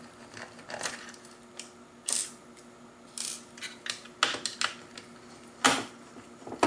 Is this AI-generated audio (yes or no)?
no